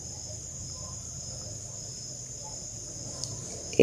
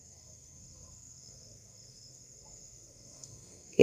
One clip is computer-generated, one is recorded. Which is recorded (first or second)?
first